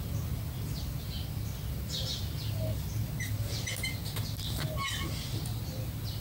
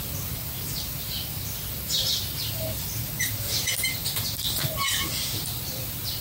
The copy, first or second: second